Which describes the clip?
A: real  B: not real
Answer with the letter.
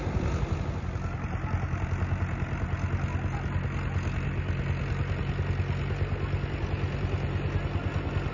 A